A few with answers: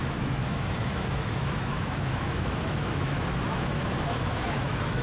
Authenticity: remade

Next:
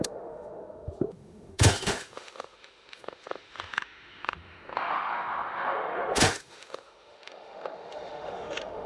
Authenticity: remade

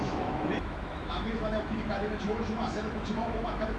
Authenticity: remade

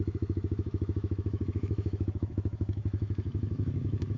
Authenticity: remade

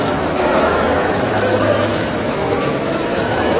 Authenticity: remade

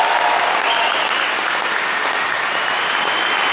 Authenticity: recorded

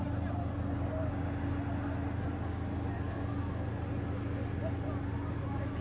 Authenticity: recorded